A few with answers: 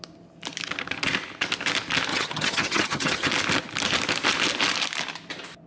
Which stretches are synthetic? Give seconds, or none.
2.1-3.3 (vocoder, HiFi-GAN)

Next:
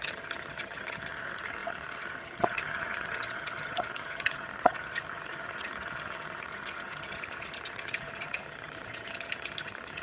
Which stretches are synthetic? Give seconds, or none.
0.0-10.0 (vocoder, HiFi-GAN)